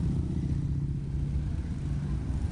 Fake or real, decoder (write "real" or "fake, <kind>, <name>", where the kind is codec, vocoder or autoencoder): real